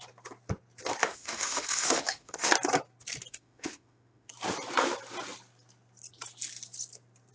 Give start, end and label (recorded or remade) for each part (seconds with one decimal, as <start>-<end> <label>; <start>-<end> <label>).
0.0-1.0 recorded; 1.0-2.5 remade; 2.5-3.3 recorded; 3.3-4.3 remade; 4.3-7.3 recorded